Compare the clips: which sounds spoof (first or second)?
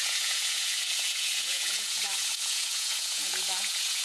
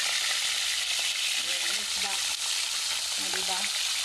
first